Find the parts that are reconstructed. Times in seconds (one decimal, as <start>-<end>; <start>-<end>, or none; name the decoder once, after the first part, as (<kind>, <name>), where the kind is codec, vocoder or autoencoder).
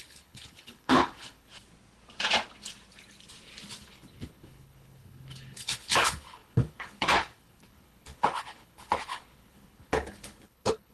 0.0-1.5 (codec, HILCodec); 3.8-10.9